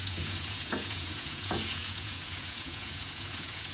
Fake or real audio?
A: fake